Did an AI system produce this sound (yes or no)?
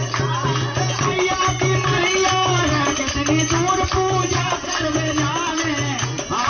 no